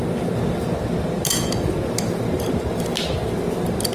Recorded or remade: recorded